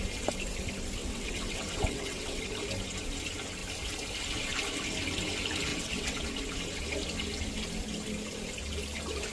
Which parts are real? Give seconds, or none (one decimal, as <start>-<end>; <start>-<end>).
0.0-1.0; 2.4-5.7; 6.2-9.3